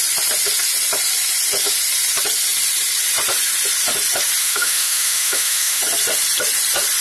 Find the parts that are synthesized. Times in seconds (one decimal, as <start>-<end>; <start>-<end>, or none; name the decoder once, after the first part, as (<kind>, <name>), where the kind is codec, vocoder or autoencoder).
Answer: 4.4-5.8 (autoencoder, DAC-VAE)